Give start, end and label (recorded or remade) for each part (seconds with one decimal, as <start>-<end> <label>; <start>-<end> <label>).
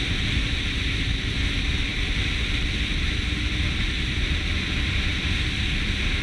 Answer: 0.0-6.2 recorded